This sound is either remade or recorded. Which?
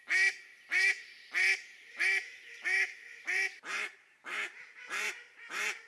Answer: remade